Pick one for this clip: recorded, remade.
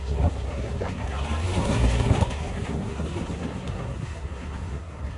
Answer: remade